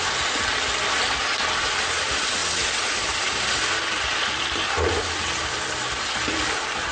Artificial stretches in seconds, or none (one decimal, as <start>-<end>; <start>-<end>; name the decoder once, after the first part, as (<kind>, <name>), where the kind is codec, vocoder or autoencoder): none